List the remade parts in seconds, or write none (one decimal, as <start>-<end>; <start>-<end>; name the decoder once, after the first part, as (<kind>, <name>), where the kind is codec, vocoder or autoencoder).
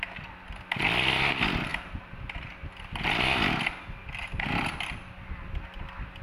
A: none